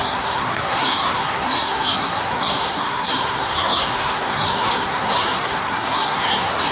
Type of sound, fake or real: fake